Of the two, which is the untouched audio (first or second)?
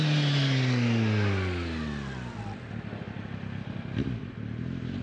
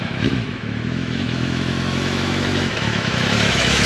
first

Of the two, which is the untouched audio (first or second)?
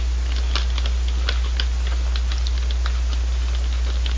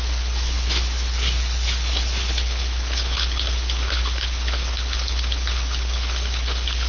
first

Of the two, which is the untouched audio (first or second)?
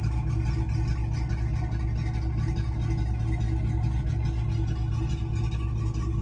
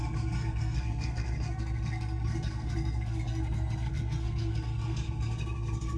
first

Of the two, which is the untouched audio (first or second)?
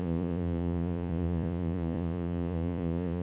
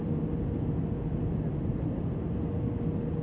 second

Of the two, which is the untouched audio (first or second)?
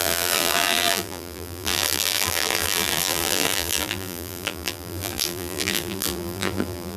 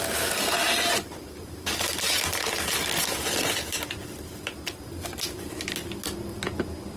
second